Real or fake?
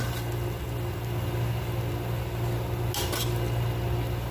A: real